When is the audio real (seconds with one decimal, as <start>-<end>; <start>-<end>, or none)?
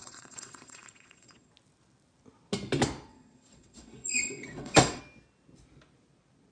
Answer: 1.5-3.1; 5.0-6.5